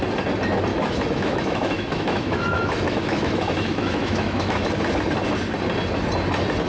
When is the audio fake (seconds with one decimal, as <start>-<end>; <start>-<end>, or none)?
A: 0.7-4.7